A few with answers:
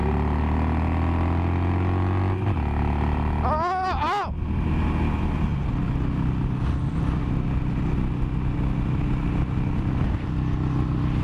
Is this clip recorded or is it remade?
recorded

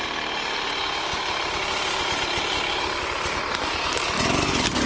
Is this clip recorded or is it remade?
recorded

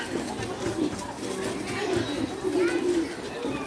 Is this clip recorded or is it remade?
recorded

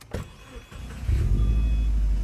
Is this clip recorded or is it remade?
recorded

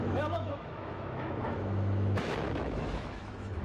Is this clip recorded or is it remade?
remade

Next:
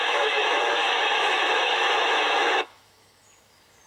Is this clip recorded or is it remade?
remade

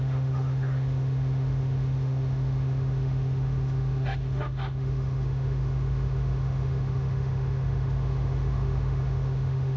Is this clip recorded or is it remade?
remade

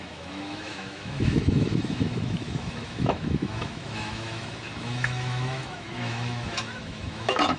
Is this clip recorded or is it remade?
remade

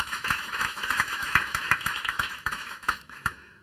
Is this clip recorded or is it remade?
remade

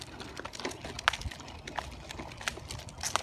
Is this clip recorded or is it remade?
recorded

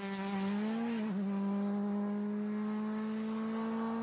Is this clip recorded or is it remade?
recorded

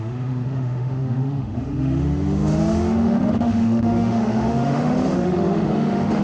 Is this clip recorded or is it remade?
remade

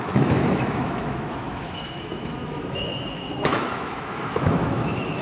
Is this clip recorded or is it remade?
remade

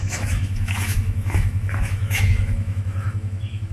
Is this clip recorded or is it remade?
remade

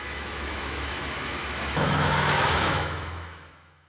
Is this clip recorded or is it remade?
remade